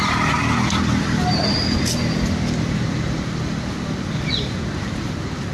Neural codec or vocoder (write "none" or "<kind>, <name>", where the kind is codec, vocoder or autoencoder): none